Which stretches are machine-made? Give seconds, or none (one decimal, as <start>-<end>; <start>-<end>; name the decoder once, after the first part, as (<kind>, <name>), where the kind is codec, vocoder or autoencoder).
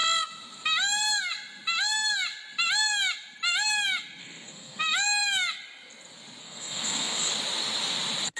4.2-4.8 (codec, SNAC); 6.4-7.3